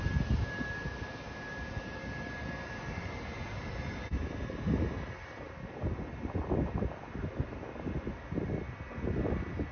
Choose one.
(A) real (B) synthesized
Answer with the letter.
A